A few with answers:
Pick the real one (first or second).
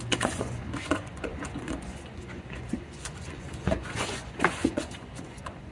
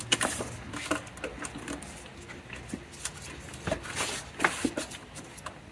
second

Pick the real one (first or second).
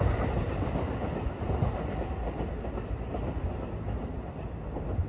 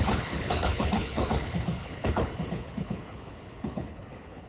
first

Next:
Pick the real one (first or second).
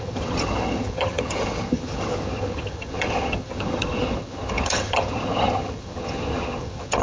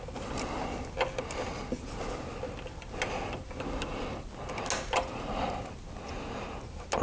second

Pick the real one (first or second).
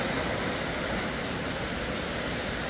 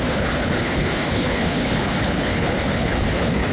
first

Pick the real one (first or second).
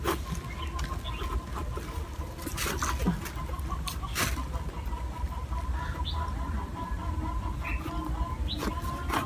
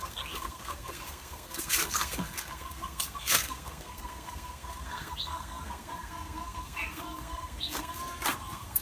first